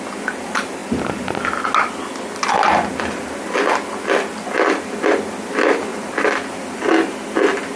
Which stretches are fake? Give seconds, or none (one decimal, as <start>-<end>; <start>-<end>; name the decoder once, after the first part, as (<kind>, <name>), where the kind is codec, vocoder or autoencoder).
5.9-6.6 (vocoder, BigVGAN v2)